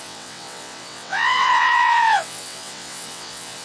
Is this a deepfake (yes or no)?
yes